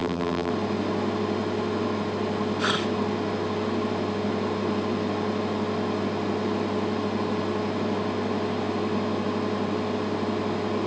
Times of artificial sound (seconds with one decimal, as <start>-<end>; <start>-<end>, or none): 0.0-0.5